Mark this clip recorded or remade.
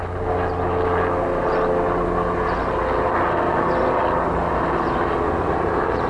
recorded